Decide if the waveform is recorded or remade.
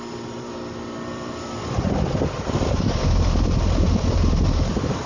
remade